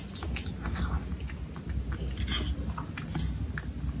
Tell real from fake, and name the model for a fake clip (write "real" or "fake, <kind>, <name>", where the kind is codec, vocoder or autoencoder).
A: real